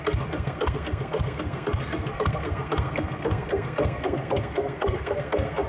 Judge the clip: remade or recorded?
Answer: remade